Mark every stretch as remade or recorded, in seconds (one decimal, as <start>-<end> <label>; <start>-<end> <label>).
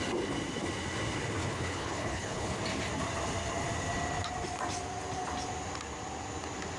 0.0-1.4 recorded; 1.4-2.6 remade; 2.6-6.8 recorded